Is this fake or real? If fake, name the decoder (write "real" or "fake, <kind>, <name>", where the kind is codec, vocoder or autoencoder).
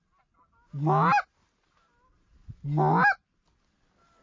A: real